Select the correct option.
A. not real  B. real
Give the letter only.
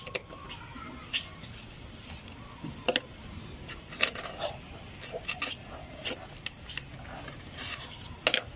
B